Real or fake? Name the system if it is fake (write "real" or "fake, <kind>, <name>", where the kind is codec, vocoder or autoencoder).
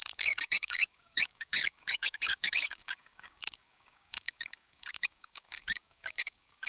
fake, codec, DAC